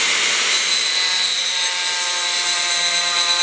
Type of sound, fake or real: fake